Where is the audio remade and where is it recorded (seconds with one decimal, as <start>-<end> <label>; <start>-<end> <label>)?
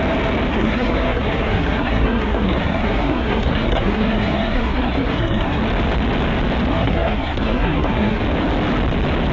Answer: 0.0-0.5 recorded; 0.5-5.6 remade; 5.6-6.7 recorded; 6.7-8.2 remade; 8.2-9.3 recorded